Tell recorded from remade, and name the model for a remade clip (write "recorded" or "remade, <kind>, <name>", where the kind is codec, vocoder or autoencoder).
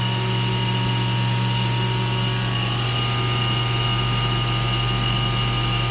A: recorded